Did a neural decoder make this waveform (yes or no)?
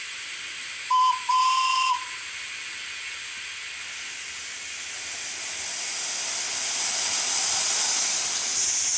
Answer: no